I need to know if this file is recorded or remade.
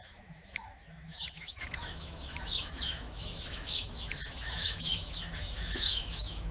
remade